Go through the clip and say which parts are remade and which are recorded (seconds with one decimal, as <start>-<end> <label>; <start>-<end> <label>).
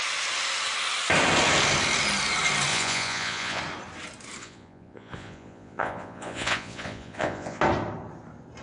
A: 0.0-2.7 recorded; 2.7-3.6 remade; 3.6-4.4 recorded; 4.4-7.6 remade; 7.6-8.6 recorded